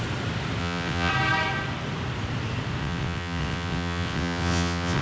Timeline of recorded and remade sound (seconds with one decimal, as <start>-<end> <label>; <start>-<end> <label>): 0.0-0.6 recorded; 0.6-1.1 remade; 1.1-2.8 recorded; 2.8-5.0 remade